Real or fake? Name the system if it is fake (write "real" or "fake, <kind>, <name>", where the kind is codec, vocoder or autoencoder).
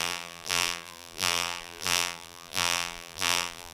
fake, vocoder, BigVGAN v2